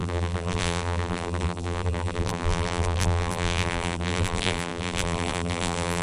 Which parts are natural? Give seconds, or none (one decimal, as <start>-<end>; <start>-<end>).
none